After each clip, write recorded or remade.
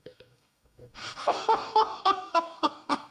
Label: remade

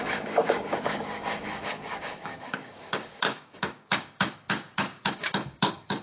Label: remade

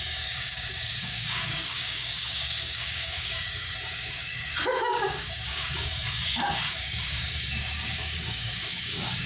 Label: remade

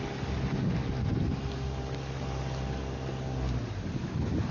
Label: recorded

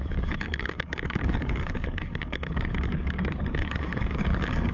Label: remade